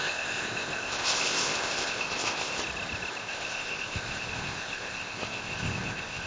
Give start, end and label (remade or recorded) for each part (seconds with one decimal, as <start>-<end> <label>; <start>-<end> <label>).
0.0-2.6 remade; 2.6-3.2 recorded; 3.2-6.3 remade